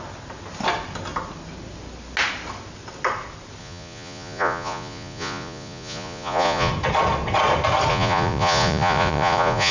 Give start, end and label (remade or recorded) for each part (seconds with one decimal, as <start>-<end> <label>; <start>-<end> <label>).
0.0-3.6 recorded; 3.6-6.7 remade; 6.7-7.9 recorded; 7.9-9.7 remade